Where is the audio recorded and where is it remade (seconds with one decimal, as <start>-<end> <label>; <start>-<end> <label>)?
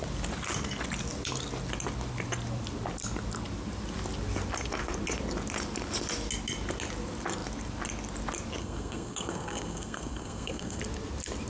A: 0.0-8.6 recorded; 8.6-10.8 remade; 10.8-11.5 recorded